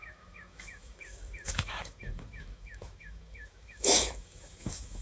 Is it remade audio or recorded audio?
remade